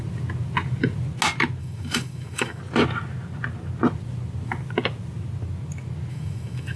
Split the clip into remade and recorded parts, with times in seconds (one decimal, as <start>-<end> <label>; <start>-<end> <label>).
0.0-1.6 recorded; 1.6-2.6 remade; 2.6-6.1 recorded; 6.1-6.8 remade